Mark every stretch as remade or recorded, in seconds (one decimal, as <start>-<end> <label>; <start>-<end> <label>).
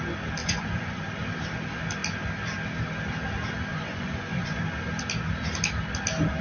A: 0.0-0.4 recorded; 0.4-1.0 remade; 1.0-3.7 recorded; 3.7-4.6 remade; 4.6-6.4 recorded